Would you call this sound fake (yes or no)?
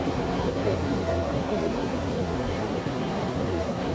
yes